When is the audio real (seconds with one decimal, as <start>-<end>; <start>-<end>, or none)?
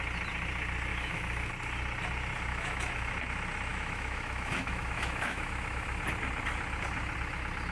0.0-0.9; 1.5-2.5; 3.1-3.7; 6.0-7.7